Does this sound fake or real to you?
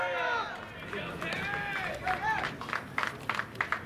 real